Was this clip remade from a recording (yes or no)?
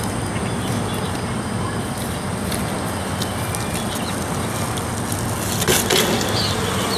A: no